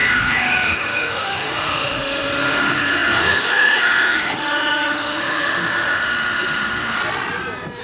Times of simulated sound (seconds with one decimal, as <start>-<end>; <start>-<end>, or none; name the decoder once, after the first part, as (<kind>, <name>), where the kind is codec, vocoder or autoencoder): 0.0-7.0 (autoencoder, DAC-VAE)